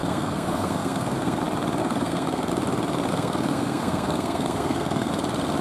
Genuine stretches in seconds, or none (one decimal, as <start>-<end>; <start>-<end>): 1.4-1.8; 2.5-3.1; 5.1-5.6